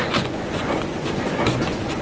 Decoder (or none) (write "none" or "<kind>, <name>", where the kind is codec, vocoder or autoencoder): vocoder, Vocos